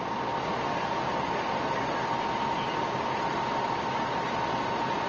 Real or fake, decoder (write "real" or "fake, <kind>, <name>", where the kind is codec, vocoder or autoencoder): real